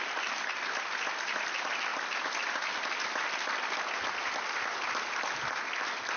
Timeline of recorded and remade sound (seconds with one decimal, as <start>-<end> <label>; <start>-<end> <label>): 0.0-6.2 recorded